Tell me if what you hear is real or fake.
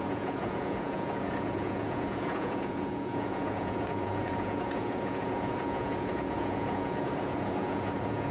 fake